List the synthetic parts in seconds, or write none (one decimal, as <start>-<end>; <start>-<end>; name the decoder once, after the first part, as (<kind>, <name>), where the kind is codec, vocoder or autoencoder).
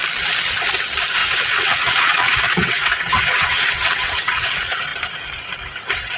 1.2-4.5 (vocoder, WaveNeXt)